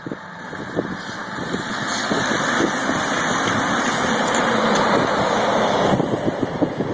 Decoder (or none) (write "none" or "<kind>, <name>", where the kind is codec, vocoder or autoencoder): none